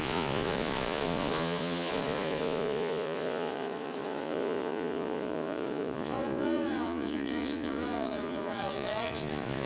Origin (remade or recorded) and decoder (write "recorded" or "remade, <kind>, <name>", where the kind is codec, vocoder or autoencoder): remade, vocoder, Vocos